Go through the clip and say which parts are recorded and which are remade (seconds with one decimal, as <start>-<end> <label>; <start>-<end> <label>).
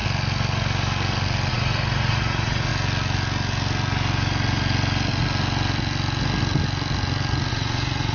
0.0-1.5 recorded; 1.5-2.7 remade; 2.7-7.5 recorded; 7.5-8.1 remade